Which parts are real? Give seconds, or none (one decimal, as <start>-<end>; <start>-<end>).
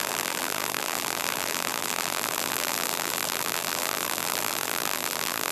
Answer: none